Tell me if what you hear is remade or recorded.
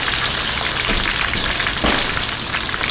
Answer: recorded